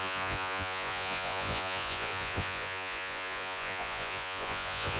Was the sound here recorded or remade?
remade